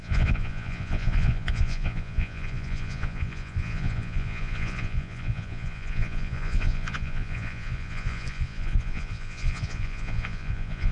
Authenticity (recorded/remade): remade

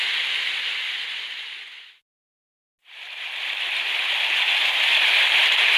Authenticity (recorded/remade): recorded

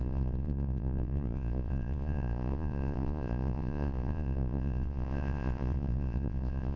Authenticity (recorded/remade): remade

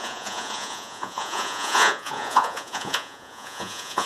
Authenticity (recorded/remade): remade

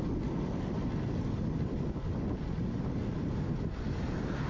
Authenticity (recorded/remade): recorded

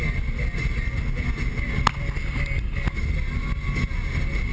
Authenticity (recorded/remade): recorded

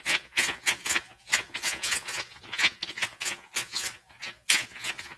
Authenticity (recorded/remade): remade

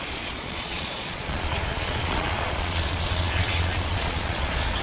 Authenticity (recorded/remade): remade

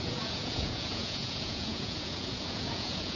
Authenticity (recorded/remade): remade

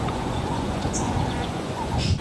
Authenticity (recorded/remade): remade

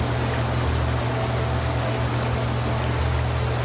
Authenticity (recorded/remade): recorded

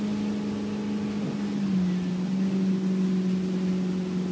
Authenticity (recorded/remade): recorded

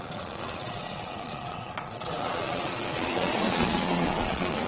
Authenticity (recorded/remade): remade